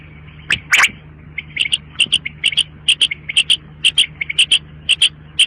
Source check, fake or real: real